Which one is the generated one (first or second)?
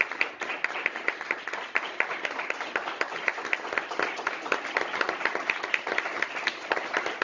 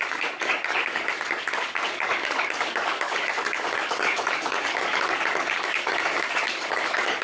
second